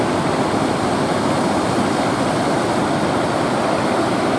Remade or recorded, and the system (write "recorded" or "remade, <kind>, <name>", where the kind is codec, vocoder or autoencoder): recorded